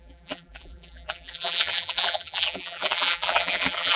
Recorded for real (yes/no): no